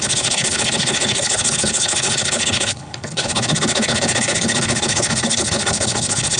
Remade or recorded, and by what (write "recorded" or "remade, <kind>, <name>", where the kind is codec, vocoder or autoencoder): remade, codec, HILCodec